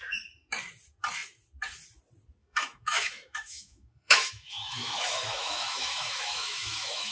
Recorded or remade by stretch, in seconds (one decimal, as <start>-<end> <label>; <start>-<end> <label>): 0.0-2.4 recorded; 2.4-7.1 remade